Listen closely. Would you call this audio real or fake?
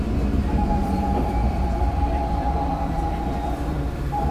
fake